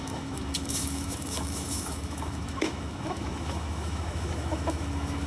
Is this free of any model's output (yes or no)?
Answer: no